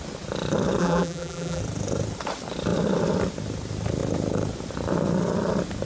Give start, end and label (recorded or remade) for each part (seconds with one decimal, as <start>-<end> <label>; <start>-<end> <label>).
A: 0.0-0.8 recorded; 0.8-1.6 remade; 1.6-5.9 recorded